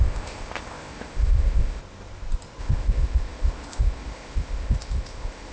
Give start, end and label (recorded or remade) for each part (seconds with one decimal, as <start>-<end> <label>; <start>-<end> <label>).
0.0-1.8 remade; 1.8-2.6 recorded; 2.6-5.5 remade